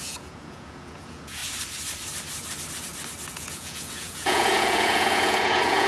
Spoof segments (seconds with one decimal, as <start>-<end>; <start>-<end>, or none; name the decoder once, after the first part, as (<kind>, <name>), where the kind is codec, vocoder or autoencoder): 0.0-1.4 (vocoder, Vocos); 3.3-5.9

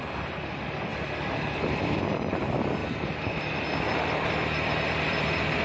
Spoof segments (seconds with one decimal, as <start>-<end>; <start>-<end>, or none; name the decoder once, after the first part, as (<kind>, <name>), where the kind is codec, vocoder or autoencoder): 0.9-1.7 (vocoder, BigVGAN v2); 2.8-5.6

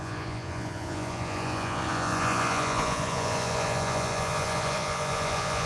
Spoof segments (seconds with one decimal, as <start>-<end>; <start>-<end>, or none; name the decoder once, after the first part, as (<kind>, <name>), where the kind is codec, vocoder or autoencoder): 0.0-5.7 (vocoder, Vocos)

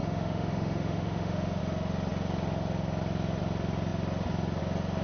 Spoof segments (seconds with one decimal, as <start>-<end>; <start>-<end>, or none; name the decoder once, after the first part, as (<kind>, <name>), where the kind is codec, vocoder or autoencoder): 0.0-1.6 (autoencoder, DAC-VAE)

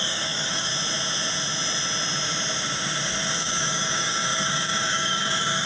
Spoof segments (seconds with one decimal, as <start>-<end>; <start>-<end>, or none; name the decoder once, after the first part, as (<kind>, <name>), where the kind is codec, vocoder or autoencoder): 0.0-0.7 (codec, DAC); 3.4-5.7

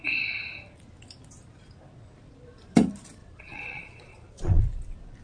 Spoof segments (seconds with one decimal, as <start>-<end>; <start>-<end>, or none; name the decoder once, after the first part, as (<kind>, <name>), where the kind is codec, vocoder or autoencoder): 3.2-4.6 (vocoder, Vocos)

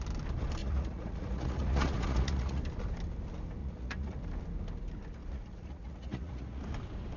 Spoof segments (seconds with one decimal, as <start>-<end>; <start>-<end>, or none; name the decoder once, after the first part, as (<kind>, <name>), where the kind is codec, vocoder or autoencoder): 0.6-2.6 (vocoder, Vocos); 3.6-4.2; 5.2-6.6